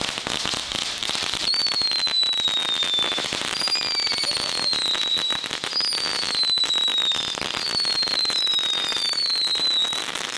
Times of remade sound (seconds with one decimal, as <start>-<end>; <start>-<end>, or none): 1.0-1.6; 6.9-9.3